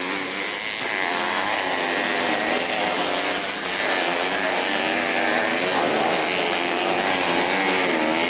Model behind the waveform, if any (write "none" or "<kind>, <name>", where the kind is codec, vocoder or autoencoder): none